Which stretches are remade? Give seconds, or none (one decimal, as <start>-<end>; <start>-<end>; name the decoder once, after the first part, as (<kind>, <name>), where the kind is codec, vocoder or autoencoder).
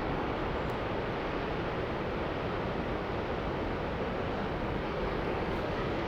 0.0-0.4 (codec, DAC); 4.1-6.1